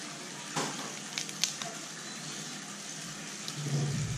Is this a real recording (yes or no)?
yes